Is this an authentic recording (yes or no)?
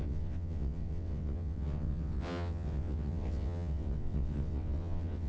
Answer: no